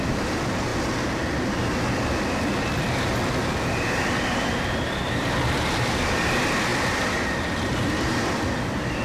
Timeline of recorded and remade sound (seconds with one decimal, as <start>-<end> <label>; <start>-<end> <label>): 0.0-0.7 remade; 0.7-4.2 recorded; 4.2-9.0 remade